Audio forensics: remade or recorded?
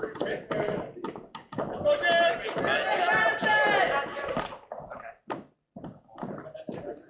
recorded